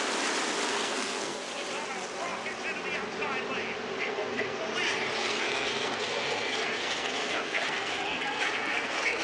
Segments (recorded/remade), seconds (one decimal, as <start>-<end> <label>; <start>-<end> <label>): 0.0-0.7 recorded; 0.7-1.4 remade; 1.4-4.0 recorded; 4.0-4.6 remade; 4.6-5.2 recorded; 5.2-9.2 remade